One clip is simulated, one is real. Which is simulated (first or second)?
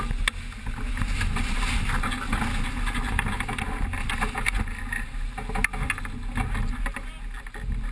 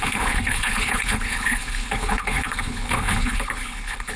second